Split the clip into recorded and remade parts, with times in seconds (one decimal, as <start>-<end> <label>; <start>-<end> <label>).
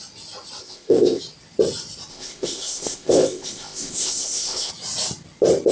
0.0-0.6 recorded; 0.6-1.2 remade; 1.2-2.1 recorded; 2.1-4.7 remade; 4.7-5.7 recorded